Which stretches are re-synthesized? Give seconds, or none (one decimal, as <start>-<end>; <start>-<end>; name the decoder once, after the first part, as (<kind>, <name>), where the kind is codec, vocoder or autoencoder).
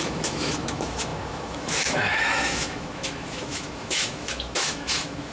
0.0-5.3 (autoencoder, DAC-VAE)